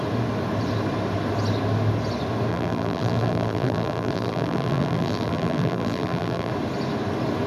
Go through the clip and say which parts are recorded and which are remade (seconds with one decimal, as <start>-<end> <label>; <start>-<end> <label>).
0.0-2.5 recorded; 2.5-6.5 remade; 6.5-7.5 recorded